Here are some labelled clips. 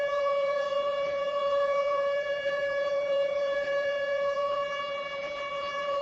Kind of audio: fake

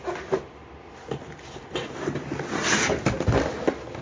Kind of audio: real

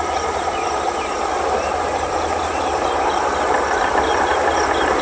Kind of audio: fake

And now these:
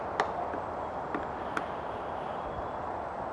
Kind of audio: real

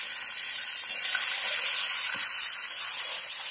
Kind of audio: real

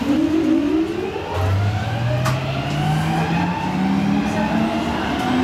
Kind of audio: real